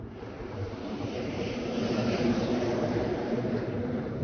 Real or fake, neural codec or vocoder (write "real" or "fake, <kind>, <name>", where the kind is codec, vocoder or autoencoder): fake, vocoder, BigVGAN v2